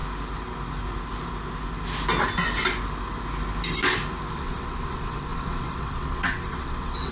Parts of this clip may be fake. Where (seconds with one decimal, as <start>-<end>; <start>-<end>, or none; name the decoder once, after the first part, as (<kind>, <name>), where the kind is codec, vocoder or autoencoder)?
4.3-7.1 (vocoder, WaveNeXt)